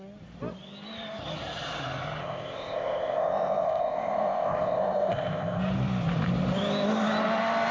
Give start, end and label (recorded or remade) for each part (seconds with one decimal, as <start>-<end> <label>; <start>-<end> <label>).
0.0-2.2 recorded; 2.2-5.6 remade; 5.6-7.7 recorded